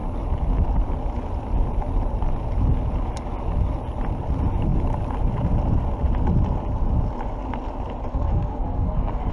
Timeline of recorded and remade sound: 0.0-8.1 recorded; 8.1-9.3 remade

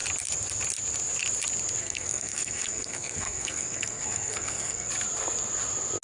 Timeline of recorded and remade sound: 0.0-1.8 recorded; 1.8-4.9 remade; 4.9-6.0 recorded

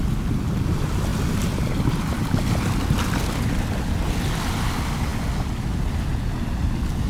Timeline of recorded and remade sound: 0.0-7.1 recorded

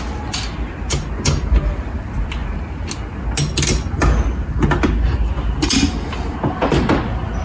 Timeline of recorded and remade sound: 0.0-7.4 recorded

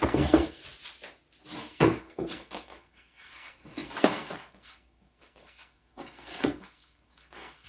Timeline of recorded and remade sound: 0.0-0.6 remade; 0.6-1.6 recorded; 1.6-7.7 remade

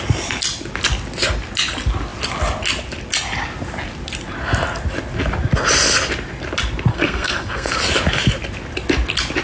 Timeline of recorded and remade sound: 0.0-6.9 recorded; 6.9-7.8 remade; 7.8-9.4 recorded